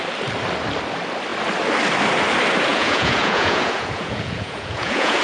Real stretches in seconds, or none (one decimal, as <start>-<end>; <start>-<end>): 0.0-2.7